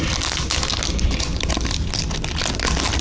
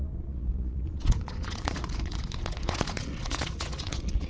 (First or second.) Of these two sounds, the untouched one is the first